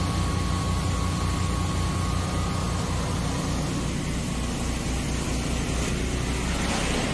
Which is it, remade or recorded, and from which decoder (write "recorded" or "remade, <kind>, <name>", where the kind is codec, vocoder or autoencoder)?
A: recorded